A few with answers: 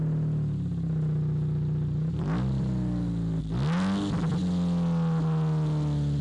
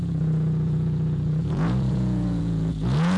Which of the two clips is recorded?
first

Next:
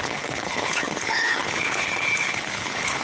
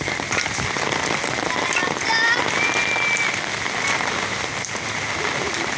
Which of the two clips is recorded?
second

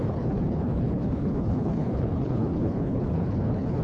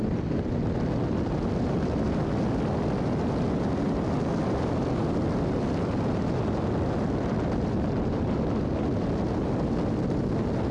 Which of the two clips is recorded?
second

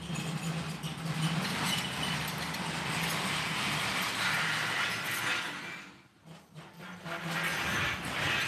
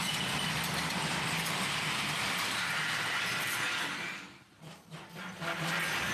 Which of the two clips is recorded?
first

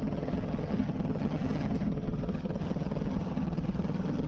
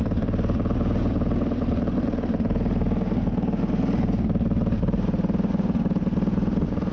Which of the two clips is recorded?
second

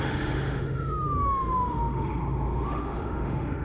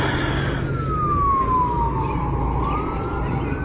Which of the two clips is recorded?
second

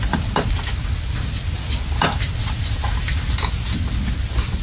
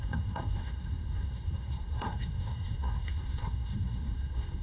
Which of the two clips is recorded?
first